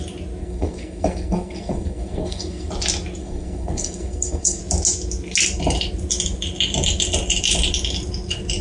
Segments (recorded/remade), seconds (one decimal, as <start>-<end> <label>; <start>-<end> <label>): 0.0-0.4 recorded; 0.4-2.7 remade; 2.7-3.2 recorded; 3.2-4.6 remade; 4.6-8.6 recorded